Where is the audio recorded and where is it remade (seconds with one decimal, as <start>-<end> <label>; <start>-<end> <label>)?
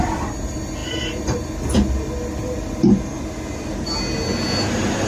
0.0-5.1 recorded